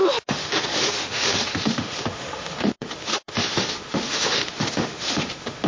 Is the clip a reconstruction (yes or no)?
yes